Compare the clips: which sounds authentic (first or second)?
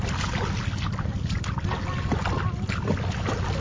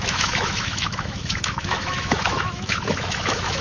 first